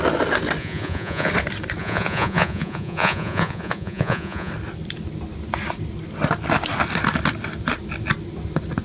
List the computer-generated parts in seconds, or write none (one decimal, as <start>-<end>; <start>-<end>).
0.6-1.3; 1.8-4.5